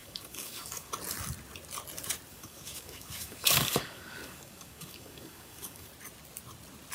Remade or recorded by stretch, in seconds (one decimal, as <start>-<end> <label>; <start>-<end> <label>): 0.0-0.9 remade; 0.9-2.3 recorded; 2.3-5.9 remade; 5.9-6.9 recorded